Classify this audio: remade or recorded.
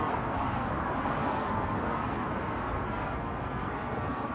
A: remade